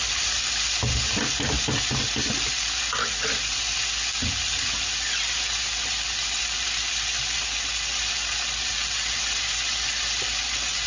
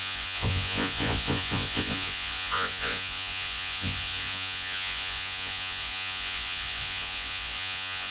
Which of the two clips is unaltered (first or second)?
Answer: first